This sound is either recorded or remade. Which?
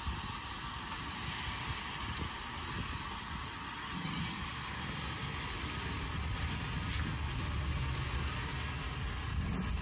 recorded